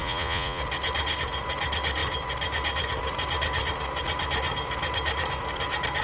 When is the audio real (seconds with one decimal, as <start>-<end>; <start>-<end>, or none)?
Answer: 0.6-6.0